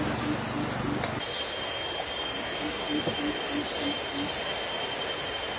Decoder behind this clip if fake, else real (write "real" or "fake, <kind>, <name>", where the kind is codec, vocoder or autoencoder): real